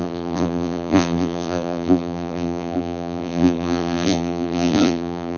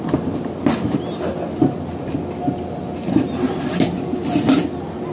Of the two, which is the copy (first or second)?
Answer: first